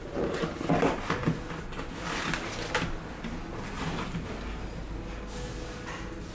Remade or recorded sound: recorded